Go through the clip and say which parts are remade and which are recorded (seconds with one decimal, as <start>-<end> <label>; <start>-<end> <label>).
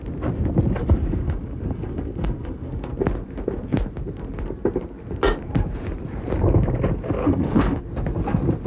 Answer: 0.0-0.8 recorded; 0.8-2.9 remade; 2.9-7.2 recorded; 7.2-7.8 remade; 7.8-8.7 recorded